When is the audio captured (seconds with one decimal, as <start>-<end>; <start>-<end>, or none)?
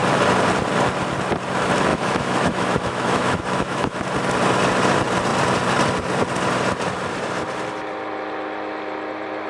0.0-1.9; 4.0-9.5